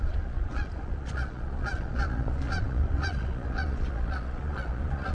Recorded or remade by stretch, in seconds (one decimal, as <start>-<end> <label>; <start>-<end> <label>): 0.0-5.1 remade

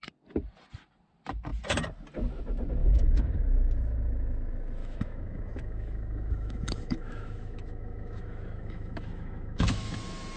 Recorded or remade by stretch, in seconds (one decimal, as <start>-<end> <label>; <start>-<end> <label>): 0.0-2.8 recorded; 2.8-3.4 remade; 3.4-4.8 recorded; 4.8-9.9 remade; 9.9-10.4 recorded

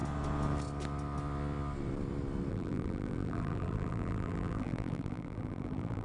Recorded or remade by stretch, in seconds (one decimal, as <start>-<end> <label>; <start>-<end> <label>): 0.0-2.5 recorded; 2.5-6.0 remade

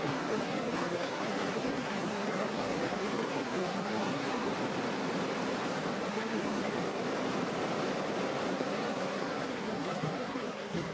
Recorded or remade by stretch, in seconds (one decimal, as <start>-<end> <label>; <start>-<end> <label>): 0.0-4.5 remade; 4.5-6.1 recorded; 6.1-6.8 remade; 6.8-8.5 recorded; 8.5-10.9 remade

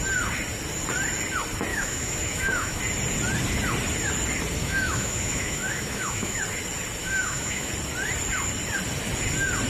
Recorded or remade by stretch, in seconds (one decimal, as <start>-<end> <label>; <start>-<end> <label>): 0.0-1.7 recorded; 1.7-2.8 remade; 2.8-4.6 recorded; 4.6-6.4 remade; 6.4-7.0 recorded; 7.0-7.7 remade; 7.7-9.7 recorded

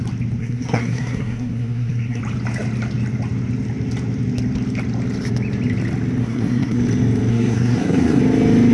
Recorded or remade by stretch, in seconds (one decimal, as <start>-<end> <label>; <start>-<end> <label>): 0.0-0.4 recorded; 0.4-2.2 remade; 2.2-6.2 recorded; 6.2-6.8 remade; 6.8-7.3 recorded; 7.3-8.2 remade; 8.2-8.7 recorded

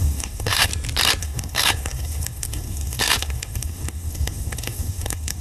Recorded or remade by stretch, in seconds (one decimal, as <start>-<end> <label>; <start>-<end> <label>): 0.0-0.7 remade; 0.7-1.2 recorded; 1.2-5.4 remade

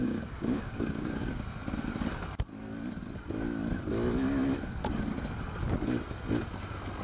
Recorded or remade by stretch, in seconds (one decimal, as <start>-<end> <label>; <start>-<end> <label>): 0.0-1.3 remade; 1.3-7.0 recorded